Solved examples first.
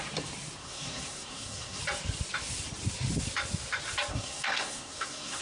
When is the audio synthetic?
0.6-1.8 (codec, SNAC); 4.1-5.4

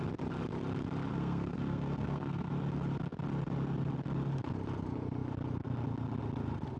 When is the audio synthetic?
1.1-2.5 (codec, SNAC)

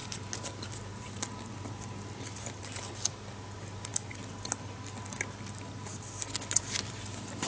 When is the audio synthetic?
none